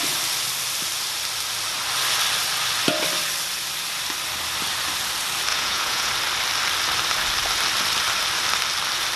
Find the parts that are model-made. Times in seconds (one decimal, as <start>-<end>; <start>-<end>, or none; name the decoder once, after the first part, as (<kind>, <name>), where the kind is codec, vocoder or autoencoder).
5.5-6.1 (vocoder, Vocos)